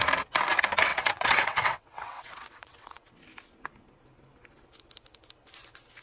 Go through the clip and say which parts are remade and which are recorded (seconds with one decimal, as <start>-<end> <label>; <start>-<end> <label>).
0.0-0.9 recorded; 0.9-3.2 remade; 3.2-6.0 recorded